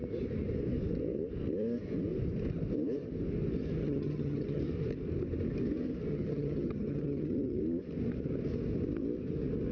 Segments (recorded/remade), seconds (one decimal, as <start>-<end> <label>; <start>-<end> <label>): 0.0-3.8 recorded; 3.8-4.6 remade; 4.6-6.1 recorded; 6.1-7.6 remade; 7.6-9.7 recorded